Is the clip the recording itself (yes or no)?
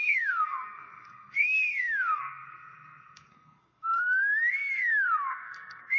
no